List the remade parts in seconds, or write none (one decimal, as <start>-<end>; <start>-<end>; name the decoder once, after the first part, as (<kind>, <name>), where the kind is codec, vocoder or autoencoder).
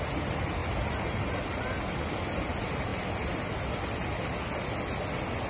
none